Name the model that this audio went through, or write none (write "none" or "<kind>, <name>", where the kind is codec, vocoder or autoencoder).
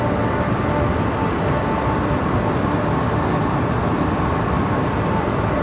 none